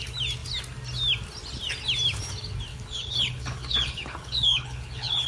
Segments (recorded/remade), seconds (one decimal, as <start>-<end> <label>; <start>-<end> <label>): 0.0-2.7 recorded; 2.7-5.3 remade